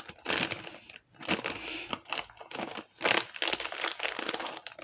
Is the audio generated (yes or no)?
no